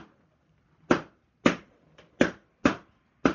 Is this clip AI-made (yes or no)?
no